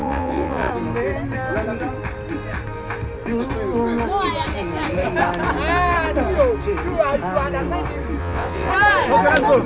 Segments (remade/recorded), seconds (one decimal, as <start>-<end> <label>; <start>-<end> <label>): 0.0-0.7 remade; 0.7-8.2 recorded; 8.2-8.7 remade; 8.7-9.7 recorded